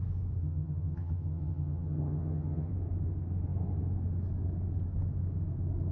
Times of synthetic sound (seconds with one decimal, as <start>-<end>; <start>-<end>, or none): 0.4-2.7

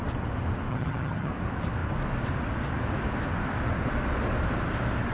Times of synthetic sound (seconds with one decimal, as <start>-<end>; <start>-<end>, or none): 0.7-1.3

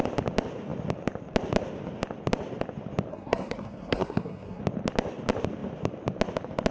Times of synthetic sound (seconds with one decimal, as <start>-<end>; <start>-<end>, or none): 3.1-4.6

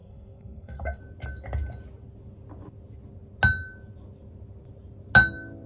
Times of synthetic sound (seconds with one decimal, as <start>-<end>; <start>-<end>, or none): 0.0-1.0

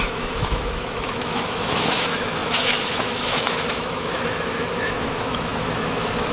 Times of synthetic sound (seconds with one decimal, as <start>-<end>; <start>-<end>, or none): 0.0-6.3

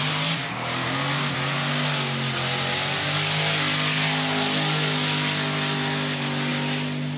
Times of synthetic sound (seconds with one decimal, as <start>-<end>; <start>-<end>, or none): none